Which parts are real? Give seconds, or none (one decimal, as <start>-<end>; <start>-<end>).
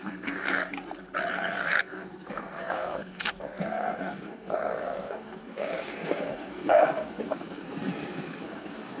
0.6-1.3